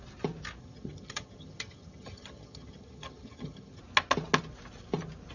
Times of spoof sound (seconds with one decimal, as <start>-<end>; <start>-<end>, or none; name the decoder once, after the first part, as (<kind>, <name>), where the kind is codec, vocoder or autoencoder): 0.6-3.8 (vocoder, HiFi-GAN)